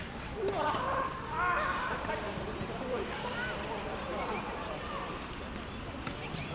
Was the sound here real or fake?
fake